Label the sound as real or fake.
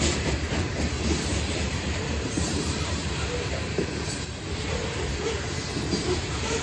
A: fake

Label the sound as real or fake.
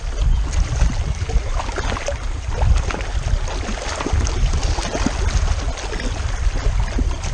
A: real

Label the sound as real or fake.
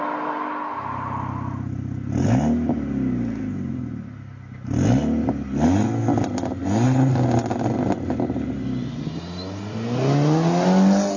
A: real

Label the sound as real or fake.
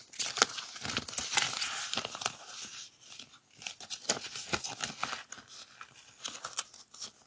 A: real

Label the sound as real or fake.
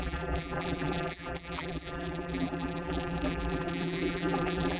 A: fake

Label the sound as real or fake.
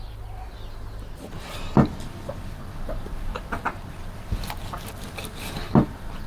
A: real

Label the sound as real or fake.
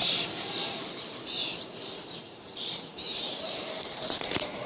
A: fake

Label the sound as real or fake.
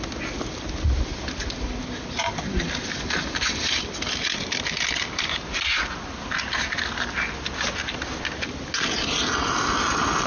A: real